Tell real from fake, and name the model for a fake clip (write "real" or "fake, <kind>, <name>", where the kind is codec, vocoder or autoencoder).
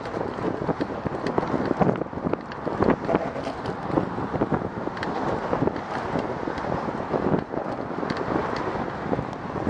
real